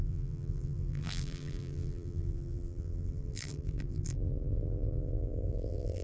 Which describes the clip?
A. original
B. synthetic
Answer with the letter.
B